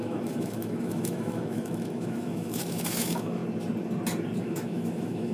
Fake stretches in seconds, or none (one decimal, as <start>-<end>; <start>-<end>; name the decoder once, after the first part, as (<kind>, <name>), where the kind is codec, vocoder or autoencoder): 0.0-3.4 (autoencoder, DAC-VAE); 4.4-5.3